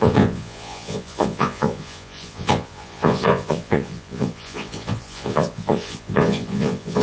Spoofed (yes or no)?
yes